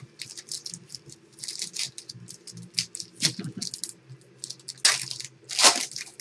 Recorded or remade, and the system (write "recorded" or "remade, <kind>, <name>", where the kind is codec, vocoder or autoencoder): recorded